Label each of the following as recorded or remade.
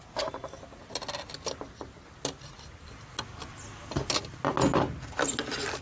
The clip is recorded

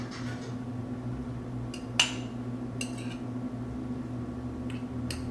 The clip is recorded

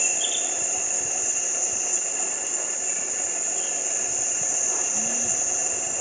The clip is recorded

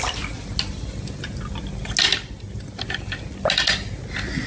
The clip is recorded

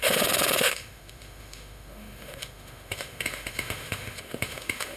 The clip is remade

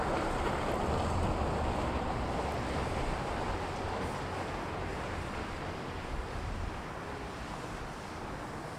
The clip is recorded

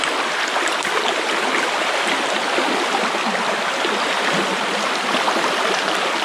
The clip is recorded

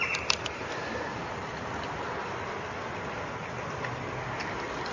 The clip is recorded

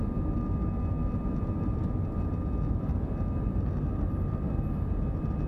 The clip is recorded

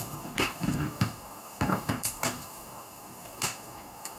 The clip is remade